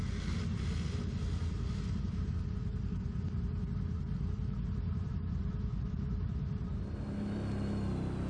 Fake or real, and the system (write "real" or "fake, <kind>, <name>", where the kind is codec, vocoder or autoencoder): real